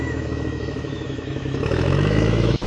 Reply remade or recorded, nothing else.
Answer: remade